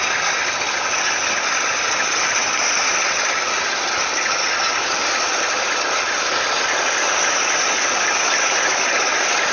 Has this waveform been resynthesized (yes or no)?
no